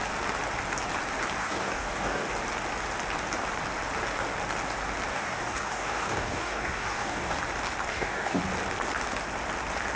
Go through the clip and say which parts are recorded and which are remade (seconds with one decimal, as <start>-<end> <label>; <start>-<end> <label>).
0.0-1.4 recorded; 1.4-2.3 remade; 2.3-5.1 recorded; 5.1-7.4 remade; 7.4-7.9 recorded; 7.9-8.4 remade; 8.4-10.0 recorded